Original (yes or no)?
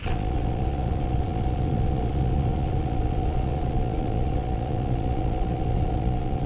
no